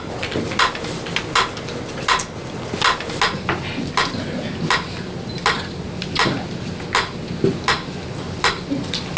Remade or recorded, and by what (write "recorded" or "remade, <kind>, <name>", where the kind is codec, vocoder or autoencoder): recorded